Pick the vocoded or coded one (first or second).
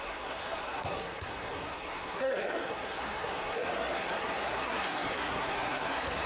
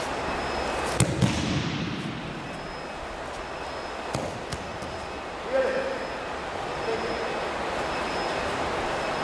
first